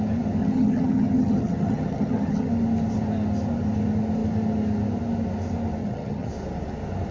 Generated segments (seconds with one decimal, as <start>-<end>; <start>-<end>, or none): 0.4-2.5; 5.8-6.3